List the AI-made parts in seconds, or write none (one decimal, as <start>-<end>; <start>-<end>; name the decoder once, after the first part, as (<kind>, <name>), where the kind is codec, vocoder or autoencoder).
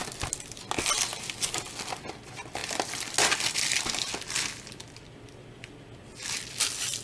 none